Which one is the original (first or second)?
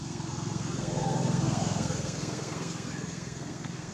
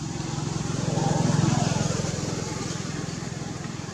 second